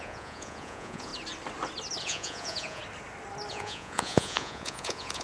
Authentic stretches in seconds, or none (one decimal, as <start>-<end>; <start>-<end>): 1.1-2.0; 2.8-3.5